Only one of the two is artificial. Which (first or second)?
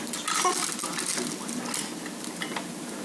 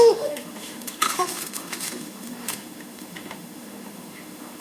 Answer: second